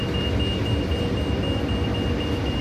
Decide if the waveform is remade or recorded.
recorded